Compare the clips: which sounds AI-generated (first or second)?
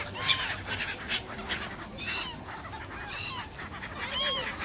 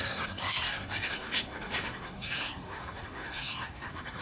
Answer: second